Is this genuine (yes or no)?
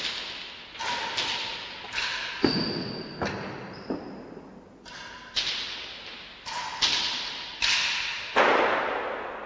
yes